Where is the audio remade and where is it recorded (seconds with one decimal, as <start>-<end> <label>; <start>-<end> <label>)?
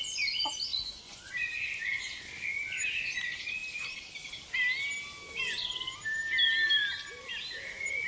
0.0-0.7 recorded; 0.7-1.3 remade; 1.3-8.1 recorded